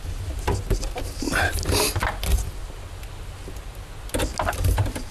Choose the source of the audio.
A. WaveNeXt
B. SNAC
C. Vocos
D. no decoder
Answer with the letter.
D